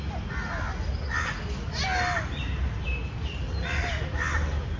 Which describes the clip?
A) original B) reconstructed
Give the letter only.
A